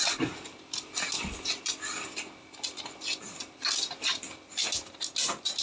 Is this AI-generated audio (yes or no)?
no